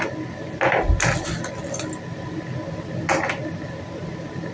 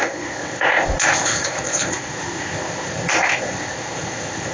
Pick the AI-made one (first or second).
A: second